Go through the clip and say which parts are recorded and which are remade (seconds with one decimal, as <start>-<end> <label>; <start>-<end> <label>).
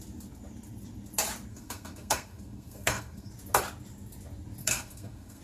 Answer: 0.0-1.5 recorded; 1.5-3.3 remade; 3.3-4.6 recorded; 4.6-5.4 remade